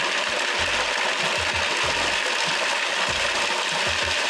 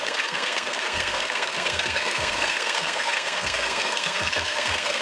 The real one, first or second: first